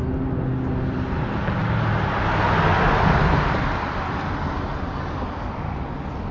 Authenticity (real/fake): real